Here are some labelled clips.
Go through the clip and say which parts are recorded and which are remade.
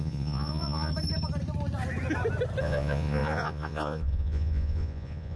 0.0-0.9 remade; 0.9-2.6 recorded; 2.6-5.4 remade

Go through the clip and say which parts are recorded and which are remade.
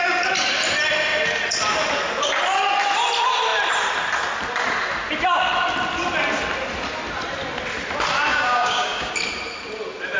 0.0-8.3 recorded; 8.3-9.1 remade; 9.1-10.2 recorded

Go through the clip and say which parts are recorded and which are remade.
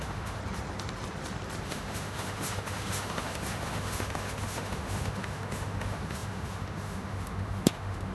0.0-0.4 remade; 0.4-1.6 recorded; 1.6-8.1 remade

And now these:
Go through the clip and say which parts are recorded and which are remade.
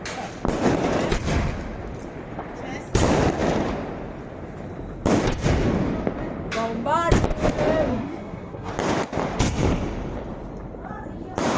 0.0-7.9 recorded; 7.9-8.7 remade; 8.7-11.6 recorded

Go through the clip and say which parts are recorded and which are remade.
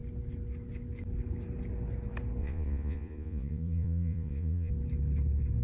0.0-2.4 recorded; 2.4-4.7 remade; 4.7-5.6 recorded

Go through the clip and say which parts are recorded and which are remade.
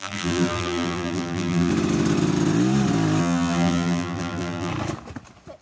0.0-1.7 remade; 1.7-3.2 recorded; 3.2-4.7 remade; 4.7-5.6 recorded